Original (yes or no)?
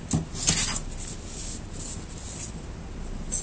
yes